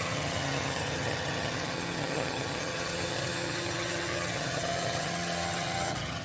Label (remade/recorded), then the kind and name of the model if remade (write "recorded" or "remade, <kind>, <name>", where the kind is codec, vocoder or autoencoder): remade, vocoder, HiFi-GAN